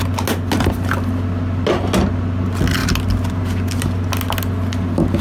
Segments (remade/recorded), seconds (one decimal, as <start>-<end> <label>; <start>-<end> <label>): 0.0-5.2 recorded